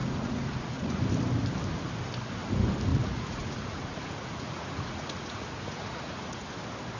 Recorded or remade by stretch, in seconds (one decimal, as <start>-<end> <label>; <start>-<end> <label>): 0.0-1.0 remade; 1.0-2.9 recorded; 2.9-6.5 remade; 6.5-7.0 recorded